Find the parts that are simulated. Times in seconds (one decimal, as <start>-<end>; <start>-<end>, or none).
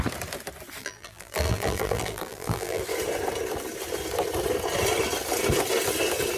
0.8-2.8